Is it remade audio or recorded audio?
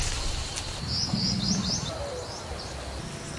recorded